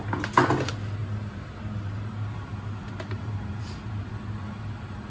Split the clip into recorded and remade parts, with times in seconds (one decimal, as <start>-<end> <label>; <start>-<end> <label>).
0.0-1.0 recorded; 1.0-4.1 remade; 4.1-5.1 recorded